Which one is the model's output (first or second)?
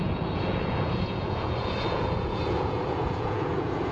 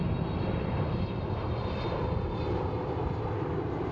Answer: first